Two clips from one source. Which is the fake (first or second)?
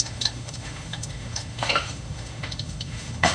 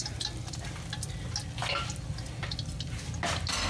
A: first